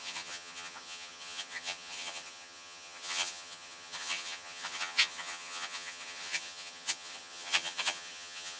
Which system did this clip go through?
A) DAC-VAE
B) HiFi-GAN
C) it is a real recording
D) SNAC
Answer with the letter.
B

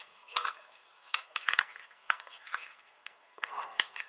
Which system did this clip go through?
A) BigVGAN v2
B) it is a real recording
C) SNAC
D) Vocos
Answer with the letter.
C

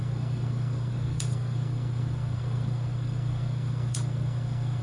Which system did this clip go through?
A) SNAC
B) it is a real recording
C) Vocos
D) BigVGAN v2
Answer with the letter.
A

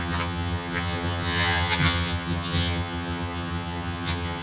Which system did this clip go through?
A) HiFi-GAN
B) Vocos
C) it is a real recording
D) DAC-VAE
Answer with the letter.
A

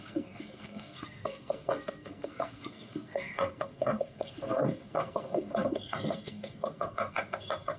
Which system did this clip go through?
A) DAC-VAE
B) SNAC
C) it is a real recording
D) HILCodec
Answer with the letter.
B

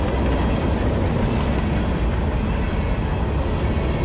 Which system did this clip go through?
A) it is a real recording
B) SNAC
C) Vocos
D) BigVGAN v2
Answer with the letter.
A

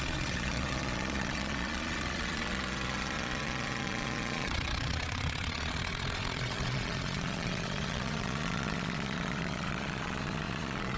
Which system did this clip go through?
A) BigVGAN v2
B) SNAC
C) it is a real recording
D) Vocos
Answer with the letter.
D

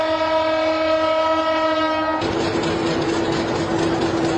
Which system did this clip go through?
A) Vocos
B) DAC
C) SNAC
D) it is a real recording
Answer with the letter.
D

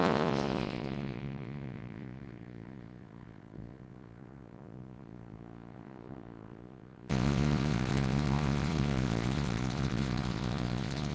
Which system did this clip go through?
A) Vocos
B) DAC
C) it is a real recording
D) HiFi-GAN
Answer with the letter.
A